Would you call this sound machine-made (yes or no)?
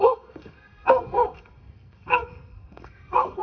yes